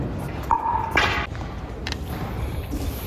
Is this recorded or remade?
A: recorded